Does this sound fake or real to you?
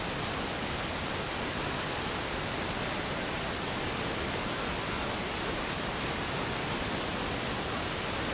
real